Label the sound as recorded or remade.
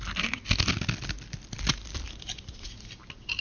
recorded